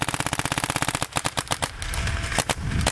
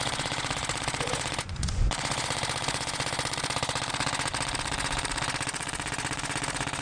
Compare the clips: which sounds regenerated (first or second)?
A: second